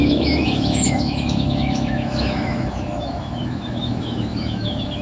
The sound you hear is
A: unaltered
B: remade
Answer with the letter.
B